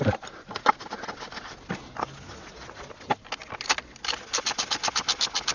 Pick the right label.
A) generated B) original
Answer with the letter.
B